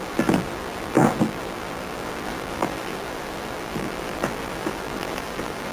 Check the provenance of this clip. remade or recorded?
remade